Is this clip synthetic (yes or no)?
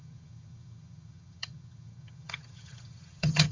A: yes